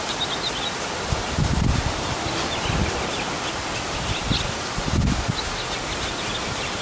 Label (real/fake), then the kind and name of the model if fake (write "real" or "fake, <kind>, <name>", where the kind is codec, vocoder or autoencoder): real